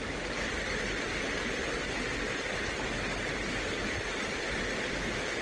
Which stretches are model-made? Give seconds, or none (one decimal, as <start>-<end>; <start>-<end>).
none